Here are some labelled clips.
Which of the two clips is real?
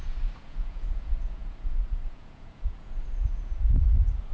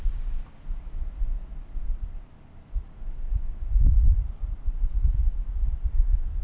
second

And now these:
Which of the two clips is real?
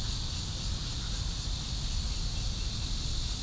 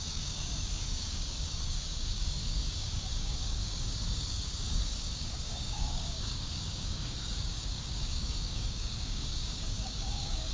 first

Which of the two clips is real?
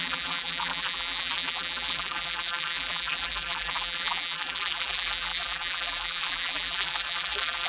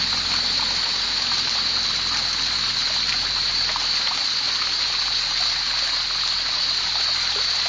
second